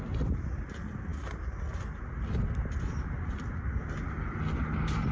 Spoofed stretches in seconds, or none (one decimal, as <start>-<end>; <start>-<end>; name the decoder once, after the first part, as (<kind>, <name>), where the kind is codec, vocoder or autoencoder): none